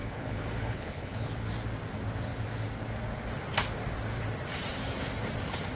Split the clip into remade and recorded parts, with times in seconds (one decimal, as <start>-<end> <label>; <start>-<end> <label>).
0.0-1.5 remade; 1.5-5.8 recorded